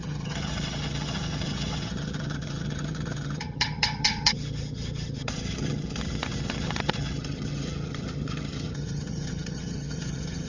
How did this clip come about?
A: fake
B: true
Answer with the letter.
A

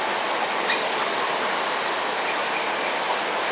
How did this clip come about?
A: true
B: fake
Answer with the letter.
A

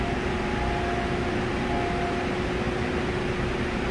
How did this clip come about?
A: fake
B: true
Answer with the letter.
B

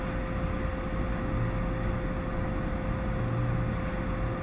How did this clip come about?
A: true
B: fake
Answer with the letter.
A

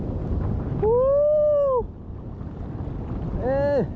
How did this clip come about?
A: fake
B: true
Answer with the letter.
B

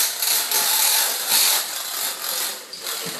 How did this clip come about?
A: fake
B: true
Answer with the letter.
B